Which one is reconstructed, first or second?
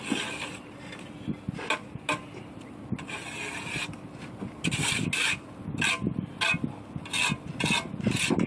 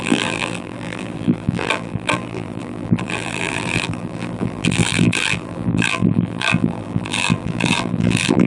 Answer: second